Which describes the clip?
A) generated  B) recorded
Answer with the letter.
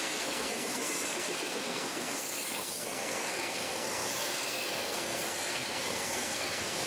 A